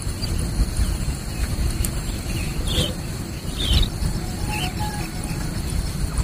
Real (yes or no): no